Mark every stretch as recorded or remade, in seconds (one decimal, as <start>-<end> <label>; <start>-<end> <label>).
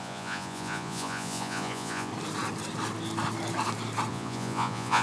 0.0-2.1 remade; 2.1-4.1 recorded; 4.1-5.0 remade